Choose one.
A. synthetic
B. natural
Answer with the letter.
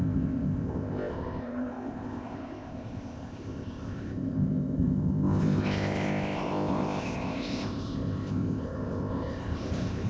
A